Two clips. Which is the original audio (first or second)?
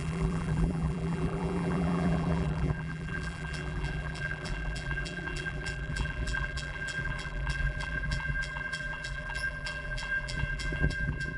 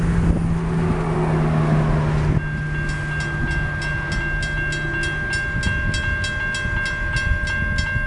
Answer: second